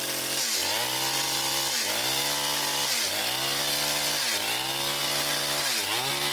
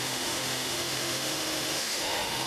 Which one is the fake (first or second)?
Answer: second